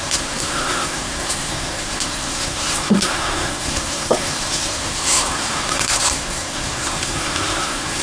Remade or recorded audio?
remade